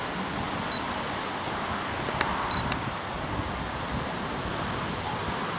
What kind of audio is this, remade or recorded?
recorded